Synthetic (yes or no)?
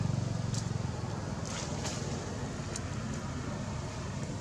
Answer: no